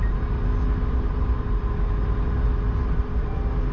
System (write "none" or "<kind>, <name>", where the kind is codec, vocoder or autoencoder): none